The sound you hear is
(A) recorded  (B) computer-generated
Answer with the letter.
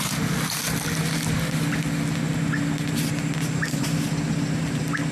A